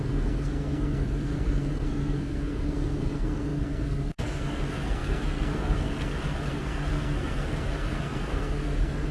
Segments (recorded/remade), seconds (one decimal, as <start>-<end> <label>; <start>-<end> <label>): 0.0-9.1 remade